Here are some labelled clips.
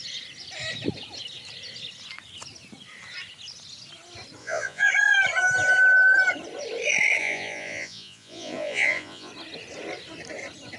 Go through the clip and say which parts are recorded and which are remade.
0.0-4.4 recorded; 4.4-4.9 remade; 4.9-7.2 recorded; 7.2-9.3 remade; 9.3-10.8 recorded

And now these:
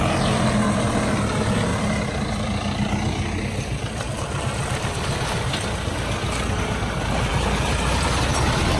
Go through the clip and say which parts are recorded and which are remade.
0.0-8.8 recorded

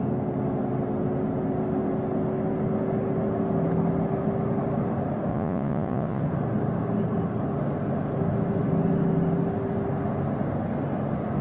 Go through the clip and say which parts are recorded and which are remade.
0.0-5.3 recorded; 5.3-6.2 remade; 6.2-11.4 recorded

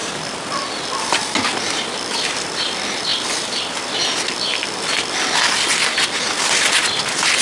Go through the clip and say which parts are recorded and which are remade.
0.0-7.4 recorded

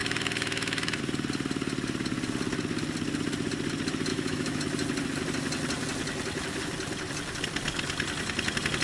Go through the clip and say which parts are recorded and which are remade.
0.0-1.0 remade; 1.0-4.1 recorded; 4.1-4.6 remade; 4.6-8.8 recorded

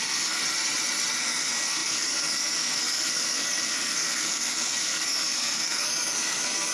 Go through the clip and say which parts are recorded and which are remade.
0.0-0.4 remade; 0.4-1.2 recorded; 1.2-6.7 remade